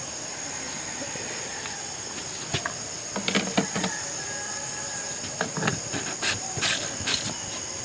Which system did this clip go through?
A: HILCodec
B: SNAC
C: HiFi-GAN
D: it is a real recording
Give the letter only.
D